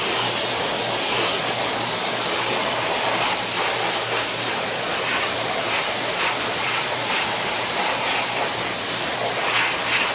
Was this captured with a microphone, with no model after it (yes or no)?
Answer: yes